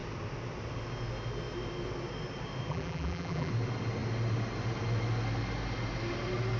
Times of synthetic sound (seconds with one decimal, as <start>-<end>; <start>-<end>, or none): 2.7-3.5